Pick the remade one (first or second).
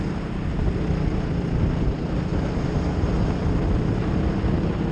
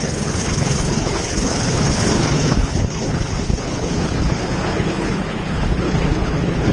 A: second